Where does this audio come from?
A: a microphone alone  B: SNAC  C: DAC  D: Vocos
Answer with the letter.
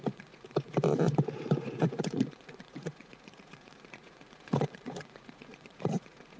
D